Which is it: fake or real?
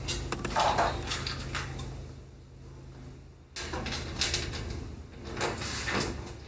real